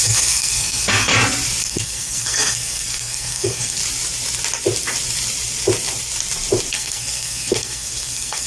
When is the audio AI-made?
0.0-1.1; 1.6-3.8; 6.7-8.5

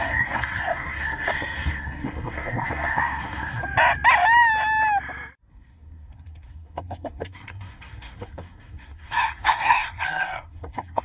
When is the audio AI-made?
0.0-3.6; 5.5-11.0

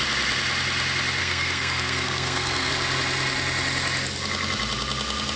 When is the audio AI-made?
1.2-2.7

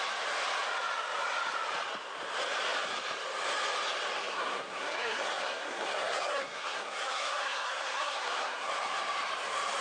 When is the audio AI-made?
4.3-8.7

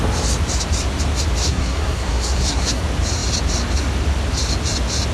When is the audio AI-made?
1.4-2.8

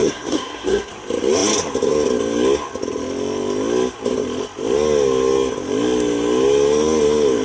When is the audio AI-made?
0.0-0.9

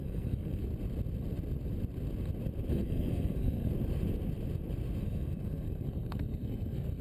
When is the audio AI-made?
0.0-0.7; 2.7-3.7; 5.0-7.0